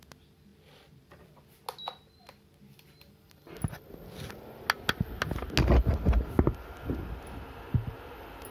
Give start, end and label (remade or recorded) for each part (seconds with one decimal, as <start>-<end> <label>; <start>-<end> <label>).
0.0-8.5 recorded